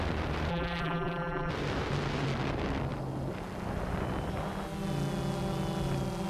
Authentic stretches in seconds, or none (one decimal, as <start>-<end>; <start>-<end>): 0.0-0.5; 1.5-6.3

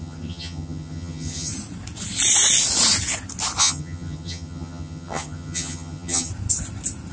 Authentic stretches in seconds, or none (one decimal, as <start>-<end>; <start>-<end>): 1.5-3.6; 6.3-7.1

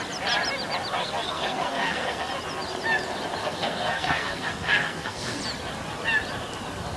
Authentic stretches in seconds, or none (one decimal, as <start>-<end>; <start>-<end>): 0.0-1.0; 2.3-3.4; 5.4-7.0

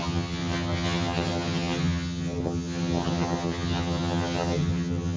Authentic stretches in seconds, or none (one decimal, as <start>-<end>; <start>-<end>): none

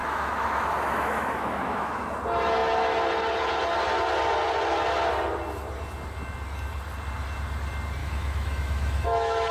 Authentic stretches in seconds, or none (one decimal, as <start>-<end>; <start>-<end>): 2.1-8.0

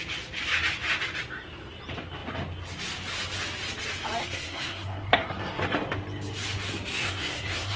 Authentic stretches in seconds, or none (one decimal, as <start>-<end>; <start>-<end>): 0.0-4.2; 5.6-7.0